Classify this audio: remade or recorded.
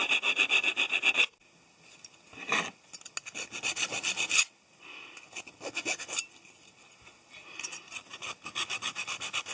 recorded